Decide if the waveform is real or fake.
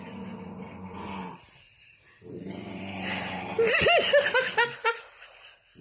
real